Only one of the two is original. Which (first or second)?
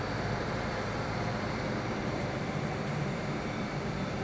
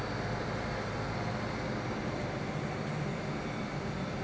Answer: second